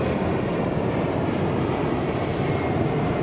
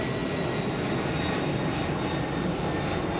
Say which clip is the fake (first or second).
first